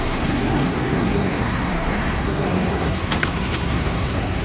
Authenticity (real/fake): fake